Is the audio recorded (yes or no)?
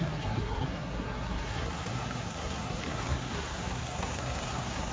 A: no